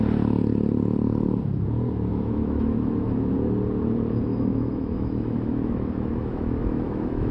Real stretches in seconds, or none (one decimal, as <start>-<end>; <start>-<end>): 0.0-2.1; 3.3-4.3